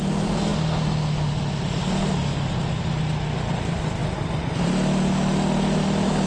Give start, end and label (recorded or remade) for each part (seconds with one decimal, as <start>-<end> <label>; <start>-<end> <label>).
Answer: 0.0-6.3 recorded